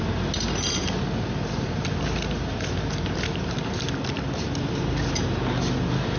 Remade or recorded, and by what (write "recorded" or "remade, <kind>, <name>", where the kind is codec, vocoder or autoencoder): recorded